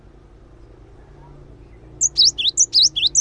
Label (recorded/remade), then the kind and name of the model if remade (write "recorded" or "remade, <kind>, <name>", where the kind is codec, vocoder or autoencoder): recorded